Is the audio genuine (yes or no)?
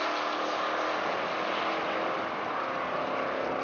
yes